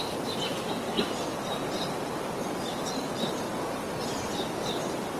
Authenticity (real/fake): real